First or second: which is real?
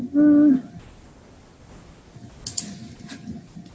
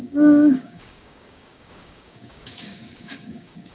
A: first